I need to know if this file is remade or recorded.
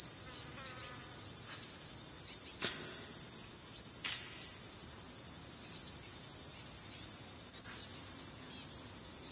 recorded